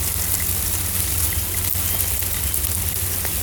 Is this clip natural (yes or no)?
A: yes